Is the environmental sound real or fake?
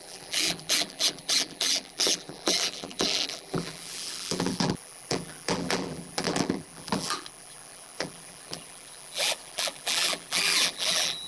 fake